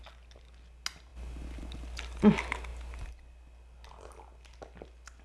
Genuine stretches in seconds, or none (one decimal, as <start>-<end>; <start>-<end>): 0.0-5.2